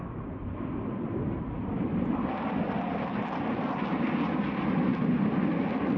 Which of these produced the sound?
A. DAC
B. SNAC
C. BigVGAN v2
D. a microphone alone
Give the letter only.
D